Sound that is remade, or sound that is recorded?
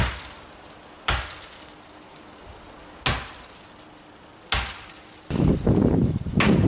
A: recorded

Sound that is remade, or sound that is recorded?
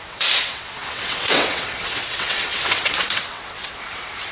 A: remade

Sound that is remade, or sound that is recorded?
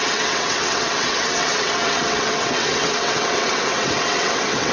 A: remade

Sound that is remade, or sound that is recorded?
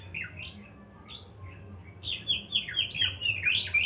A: recorded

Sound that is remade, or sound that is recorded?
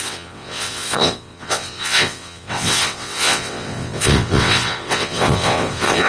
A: remade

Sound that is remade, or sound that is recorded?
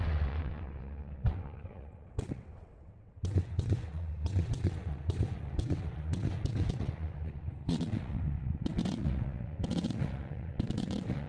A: remade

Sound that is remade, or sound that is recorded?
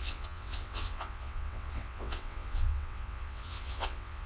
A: remade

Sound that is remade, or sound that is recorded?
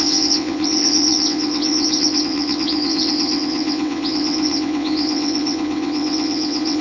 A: remade